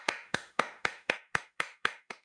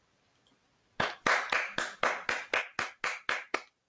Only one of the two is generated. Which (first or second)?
first